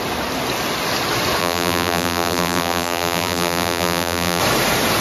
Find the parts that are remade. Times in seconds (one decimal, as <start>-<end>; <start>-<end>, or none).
1.4-4.4